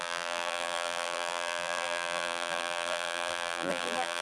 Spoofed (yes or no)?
yes